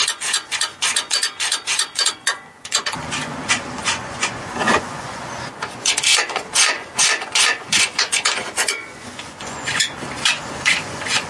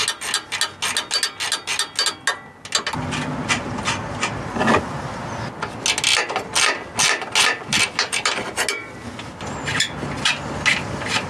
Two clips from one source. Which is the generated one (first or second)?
first